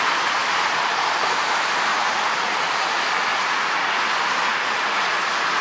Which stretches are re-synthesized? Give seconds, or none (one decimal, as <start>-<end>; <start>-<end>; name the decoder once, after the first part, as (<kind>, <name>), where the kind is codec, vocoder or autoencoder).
1.9-2.9 (vocoder, Vocos); 3.3-4.0; 4.5-5.6